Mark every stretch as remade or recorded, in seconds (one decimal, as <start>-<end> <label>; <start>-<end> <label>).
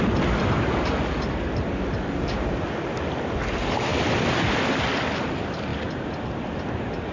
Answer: 0.0-7.1 recorded